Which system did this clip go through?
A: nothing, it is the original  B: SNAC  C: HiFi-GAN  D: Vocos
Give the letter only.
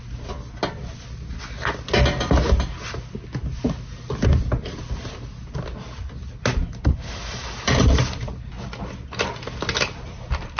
A